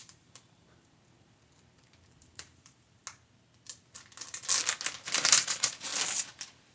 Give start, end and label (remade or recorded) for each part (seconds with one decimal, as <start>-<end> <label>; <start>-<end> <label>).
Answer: 0.0-3.0 remade; 3.0-5.3 recorded; 5.3-5.9 remade; 5.9-6.7 recorded